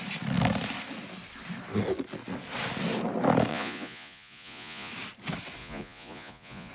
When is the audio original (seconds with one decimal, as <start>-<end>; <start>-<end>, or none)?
0.0-3.5; 4.9-5.6